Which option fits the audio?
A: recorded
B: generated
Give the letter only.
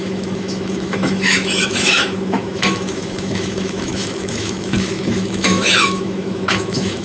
B